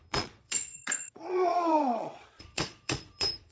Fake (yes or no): yes